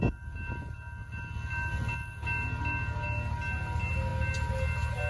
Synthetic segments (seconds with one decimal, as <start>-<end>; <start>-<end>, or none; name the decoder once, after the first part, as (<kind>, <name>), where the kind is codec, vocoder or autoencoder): none